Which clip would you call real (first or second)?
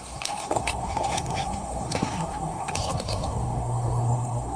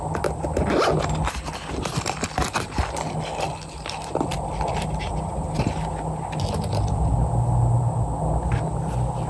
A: second